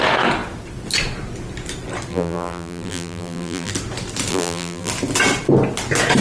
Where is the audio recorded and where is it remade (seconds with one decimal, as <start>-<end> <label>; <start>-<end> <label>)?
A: 0.0-2.1 recorded; 2.1-3.7 remade; 3.7-4.3 recorded; 4.3-4.9 remade; 4.9-6.2 recorded